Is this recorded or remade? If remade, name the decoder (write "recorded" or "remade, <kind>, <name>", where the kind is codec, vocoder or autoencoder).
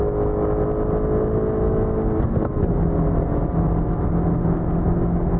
recorded